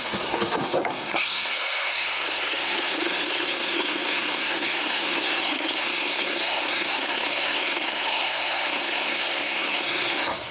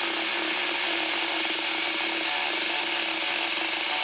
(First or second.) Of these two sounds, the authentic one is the second